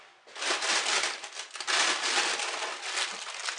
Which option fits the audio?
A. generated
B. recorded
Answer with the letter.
B